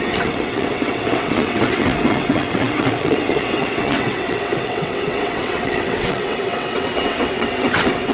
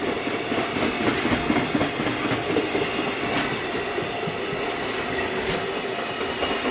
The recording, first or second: second